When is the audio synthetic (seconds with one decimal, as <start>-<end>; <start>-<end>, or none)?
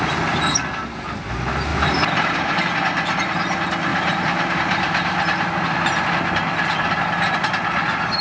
1.7-2.6; 3.9-6.1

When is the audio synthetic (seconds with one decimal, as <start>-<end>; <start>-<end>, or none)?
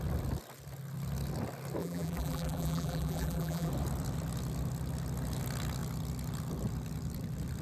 1.8-3.7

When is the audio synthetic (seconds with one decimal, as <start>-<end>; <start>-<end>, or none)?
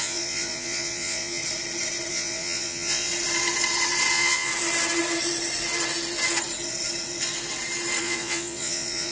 0.0-1.4; 2.1-3.1; 4.1-4.5; 8.0-9.1